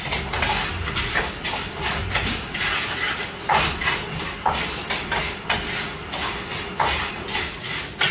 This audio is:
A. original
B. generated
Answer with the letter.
A